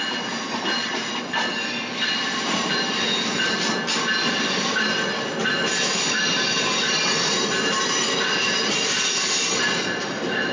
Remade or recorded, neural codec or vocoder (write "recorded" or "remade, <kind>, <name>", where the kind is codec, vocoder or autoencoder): recorded